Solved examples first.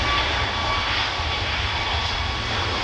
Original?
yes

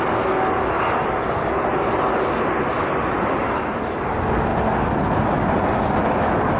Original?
yes